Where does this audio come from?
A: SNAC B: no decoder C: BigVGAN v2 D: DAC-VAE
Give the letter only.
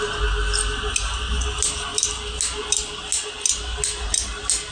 B